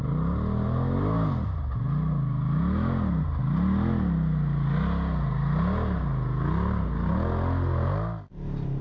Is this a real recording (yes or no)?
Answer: yes